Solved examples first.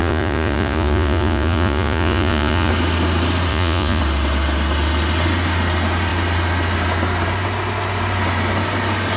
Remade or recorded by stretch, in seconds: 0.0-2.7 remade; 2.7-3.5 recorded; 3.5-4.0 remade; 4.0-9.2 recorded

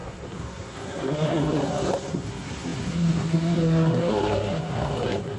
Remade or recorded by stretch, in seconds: 0.0-5.4 remade

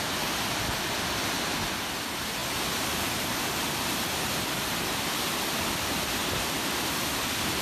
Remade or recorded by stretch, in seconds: 0.0-7.6 recorded

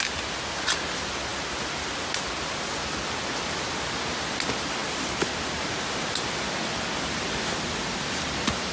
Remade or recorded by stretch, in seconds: 0.0-8.7 recorded